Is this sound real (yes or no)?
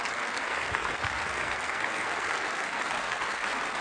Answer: no